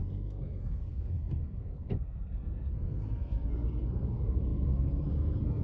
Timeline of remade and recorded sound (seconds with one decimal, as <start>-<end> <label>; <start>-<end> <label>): 0.0-5.6 remade